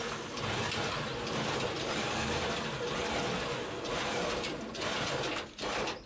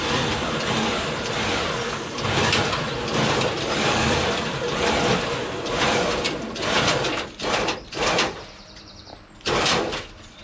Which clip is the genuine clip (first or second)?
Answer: first